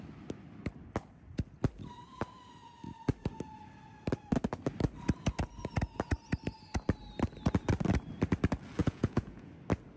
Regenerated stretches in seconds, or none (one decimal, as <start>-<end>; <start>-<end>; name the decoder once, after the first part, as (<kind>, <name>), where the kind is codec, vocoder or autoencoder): 8.8-9.5 (vocoder, Vocos)

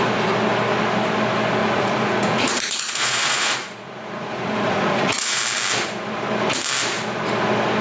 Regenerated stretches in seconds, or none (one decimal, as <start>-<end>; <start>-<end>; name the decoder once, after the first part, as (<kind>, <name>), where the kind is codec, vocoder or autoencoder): 1.6-5.4 (vocoder, Vocos)

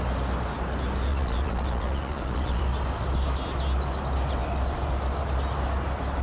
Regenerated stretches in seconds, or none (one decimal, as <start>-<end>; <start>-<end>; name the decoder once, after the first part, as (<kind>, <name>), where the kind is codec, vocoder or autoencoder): 1.1-2.6 (vocoder, Vocos)

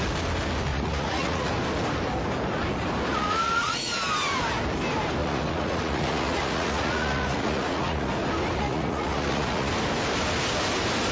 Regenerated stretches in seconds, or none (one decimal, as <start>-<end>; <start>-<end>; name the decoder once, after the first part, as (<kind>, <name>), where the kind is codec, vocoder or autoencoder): 0.7-1.5 (vocoder, Vocos); 3.1-3.9; 5.2-8.1; 8.6-9.7

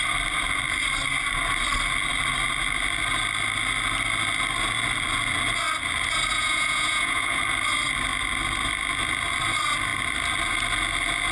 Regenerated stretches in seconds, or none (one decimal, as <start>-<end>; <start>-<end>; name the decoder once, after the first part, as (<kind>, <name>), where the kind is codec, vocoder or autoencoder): 6.3-7.4 (vocoder, Vocos)

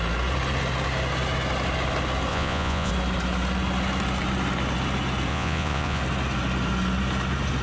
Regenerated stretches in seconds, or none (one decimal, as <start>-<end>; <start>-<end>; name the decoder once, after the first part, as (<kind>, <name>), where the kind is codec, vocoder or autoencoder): 2.3-2.9 (vocoder, Vocos); 5.3-6.0

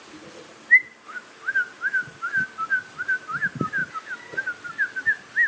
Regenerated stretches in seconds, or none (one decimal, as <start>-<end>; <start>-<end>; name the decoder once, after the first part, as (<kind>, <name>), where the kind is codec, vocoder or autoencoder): none

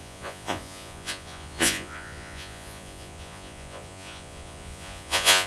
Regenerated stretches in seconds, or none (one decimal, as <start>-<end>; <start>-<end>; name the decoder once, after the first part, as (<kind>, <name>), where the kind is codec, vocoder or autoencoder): 0.0-5.5 (vocoder, Vocos)